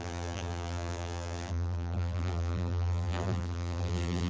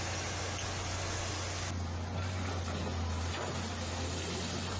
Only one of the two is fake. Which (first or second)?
first